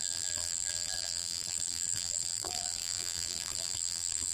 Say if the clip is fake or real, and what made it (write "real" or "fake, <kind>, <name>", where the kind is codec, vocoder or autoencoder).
fake, vocoder, BigVGAN v2